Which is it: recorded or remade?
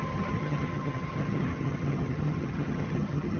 remade